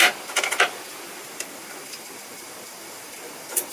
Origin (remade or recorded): remade